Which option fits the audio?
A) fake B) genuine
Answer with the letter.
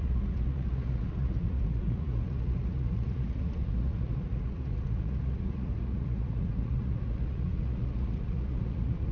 A